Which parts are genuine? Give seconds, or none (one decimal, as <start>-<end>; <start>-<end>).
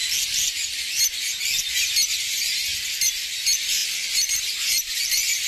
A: 0.0-2.2